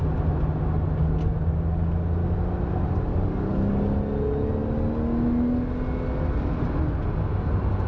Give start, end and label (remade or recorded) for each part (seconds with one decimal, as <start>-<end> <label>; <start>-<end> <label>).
0.0-3.1 recorded; 3.1-3.7 remade; 3.7-7.9 recorded